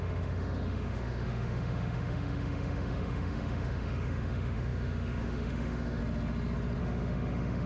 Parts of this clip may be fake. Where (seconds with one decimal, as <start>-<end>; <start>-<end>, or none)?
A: 0.0-6.0; 6.8-7.7